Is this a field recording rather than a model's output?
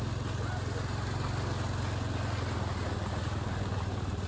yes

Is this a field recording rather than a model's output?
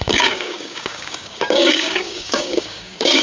no